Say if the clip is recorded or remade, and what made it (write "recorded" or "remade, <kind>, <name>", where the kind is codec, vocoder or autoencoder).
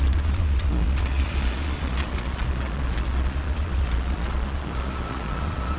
remade, vocoder, Vocos